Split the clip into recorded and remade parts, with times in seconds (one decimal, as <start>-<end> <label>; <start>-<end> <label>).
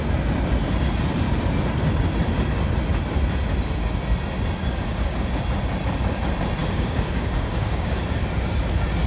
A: 0.0-4.6 recorded; 4.6-5.4 remade; 5.4-6.6 recorded; 6.6-8.0 remade; 8.0-9.1 recorded